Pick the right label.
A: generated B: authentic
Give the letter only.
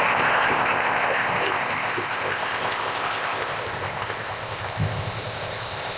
A